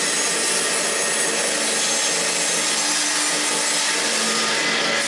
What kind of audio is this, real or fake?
real